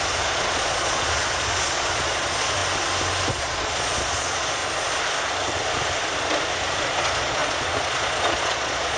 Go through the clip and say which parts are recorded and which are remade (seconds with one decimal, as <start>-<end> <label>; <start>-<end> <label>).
0.0-2.6 remade; 2.6-3.3 recorded; 3.3-4.6 remade; 4.6-7.0 recorded; 7.0-9.0 remade